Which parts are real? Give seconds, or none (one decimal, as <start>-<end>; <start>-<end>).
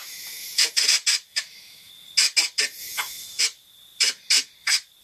0.7-1.3; 1.9-2.8; 3.4-5.0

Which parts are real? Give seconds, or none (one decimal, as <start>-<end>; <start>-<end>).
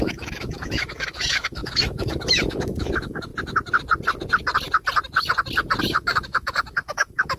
3.3-5.8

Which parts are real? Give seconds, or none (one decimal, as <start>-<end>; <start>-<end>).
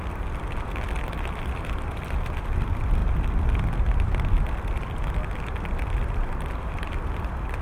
0.0-7.6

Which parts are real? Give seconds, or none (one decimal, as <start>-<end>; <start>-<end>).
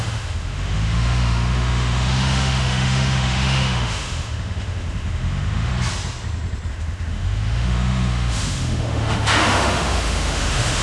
5.7-6.7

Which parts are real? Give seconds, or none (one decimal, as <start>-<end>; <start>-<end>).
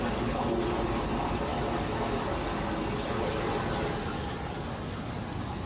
0.0-5.7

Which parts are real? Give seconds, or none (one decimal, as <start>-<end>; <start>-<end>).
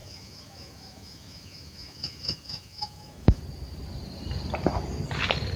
3.4-5.6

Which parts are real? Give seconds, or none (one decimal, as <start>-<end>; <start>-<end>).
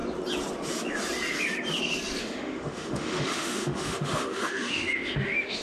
0.0-2.2